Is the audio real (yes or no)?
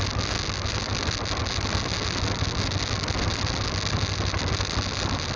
yes